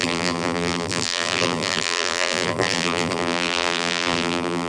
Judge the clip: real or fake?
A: fake